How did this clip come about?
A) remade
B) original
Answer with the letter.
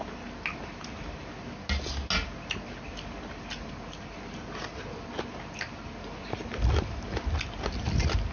B